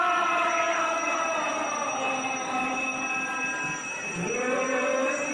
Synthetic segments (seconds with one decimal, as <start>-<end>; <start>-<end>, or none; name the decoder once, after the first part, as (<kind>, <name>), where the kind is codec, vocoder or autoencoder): none